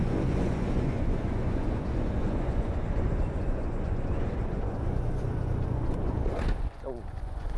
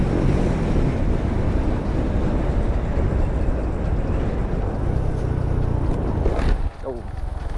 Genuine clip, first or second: second